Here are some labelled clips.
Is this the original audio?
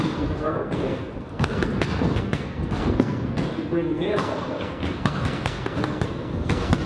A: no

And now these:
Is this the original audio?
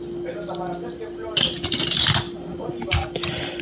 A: yes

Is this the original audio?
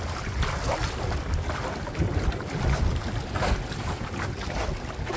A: yes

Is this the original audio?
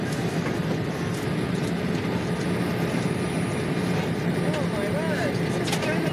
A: yes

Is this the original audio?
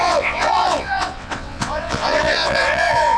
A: no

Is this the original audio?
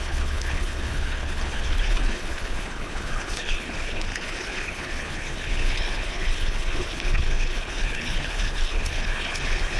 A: no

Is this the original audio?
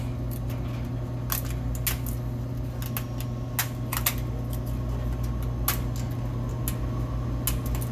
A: yes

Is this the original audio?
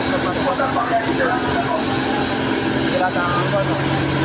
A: yes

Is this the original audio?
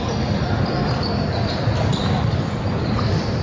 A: yes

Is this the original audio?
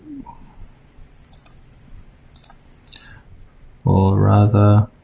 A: yes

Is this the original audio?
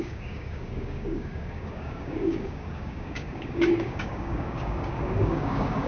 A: no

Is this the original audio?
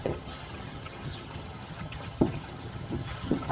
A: no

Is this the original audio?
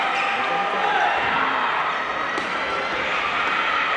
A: yes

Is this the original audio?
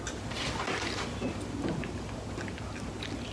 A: yes